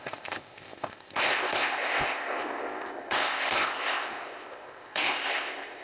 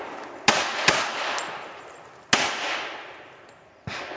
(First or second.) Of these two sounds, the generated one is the first